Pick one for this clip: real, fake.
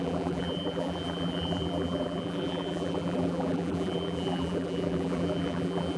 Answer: fake